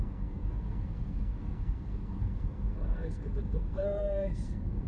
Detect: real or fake fake